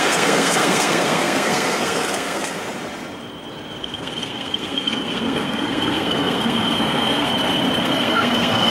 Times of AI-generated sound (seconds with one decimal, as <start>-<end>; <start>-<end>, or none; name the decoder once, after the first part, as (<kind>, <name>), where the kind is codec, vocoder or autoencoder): 0.0-2.6 (codec, SNAC); 3.8-7.3; 7.8-8.7

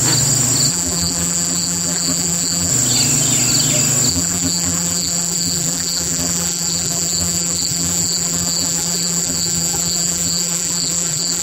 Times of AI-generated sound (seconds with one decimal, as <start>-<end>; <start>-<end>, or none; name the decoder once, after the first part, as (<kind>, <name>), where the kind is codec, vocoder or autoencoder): 0.7-2.7 (vocoder, BigVGAN v2); 4.1-11.4

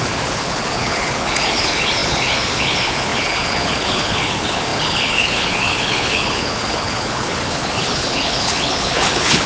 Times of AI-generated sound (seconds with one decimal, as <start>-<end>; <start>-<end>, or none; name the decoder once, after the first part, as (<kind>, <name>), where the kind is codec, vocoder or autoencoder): 0.0-9.5 (codec, HILCodec)

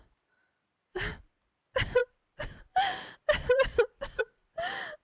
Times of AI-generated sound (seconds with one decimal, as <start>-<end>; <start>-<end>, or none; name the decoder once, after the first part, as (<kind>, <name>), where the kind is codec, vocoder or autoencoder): 0.0-5.0 (vocoder, BigVGAN v2)

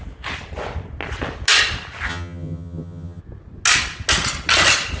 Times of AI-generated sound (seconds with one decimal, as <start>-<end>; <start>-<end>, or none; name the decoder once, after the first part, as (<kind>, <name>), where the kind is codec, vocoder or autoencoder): 2.1-3.2 (vocoder, HiFi-GAN)

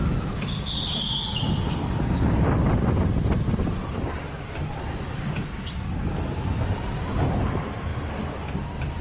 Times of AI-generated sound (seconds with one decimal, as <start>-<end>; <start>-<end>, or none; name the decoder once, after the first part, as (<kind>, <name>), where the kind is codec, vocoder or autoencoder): none